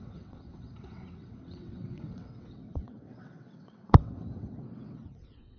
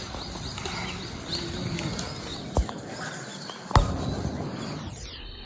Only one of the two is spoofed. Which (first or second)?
first